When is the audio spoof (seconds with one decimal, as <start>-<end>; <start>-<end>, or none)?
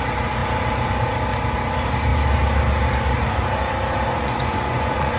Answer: 4.1-5.2